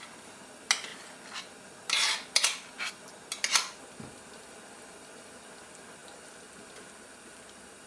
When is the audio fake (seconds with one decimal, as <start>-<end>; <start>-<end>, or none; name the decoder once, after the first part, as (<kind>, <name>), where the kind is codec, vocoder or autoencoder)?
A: none